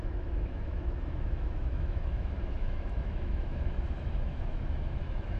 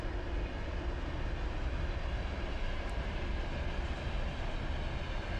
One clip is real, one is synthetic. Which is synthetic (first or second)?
first